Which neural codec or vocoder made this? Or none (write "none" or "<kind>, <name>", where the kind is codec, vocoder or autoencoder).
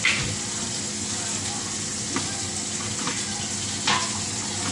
none